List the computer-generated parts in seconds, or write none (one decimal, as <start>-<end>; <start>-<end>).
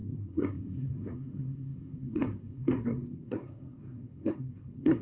0.0-5.0